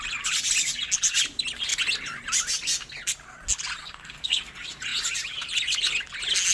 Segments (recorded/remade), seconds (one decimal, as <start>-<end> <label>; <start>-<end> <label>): 0.0-3.8 recorded; 3.8-4.4 remade; 4.4-6.5 recorded